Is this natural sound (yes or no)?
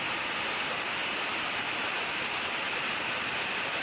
yes